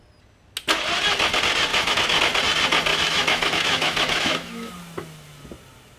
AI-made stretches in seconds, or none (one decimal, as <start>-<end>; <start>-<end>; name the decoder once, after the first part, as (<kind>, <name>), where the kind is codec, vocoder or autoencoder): 1.7-2.2 (autoencoder, DAC-VAE); 2.9-4.7